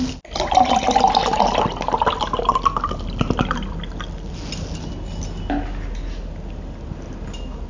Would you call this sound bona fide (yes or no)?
yes